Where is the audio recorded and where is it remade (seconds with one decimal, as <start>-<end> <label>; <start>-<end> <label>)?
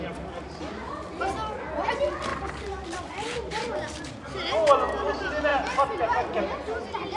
0.0-7.2 recorded